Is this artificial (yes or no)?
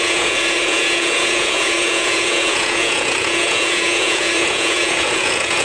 yes